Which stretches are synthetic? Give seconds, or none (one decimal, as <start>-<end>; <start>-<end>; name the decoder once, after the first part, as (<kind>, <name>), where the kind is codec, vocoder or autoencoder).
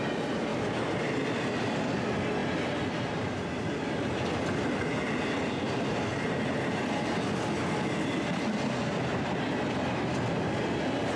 none